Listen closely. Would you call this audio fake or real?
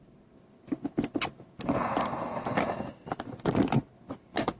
real